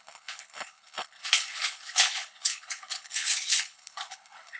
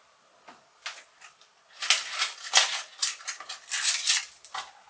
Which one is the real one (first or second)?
second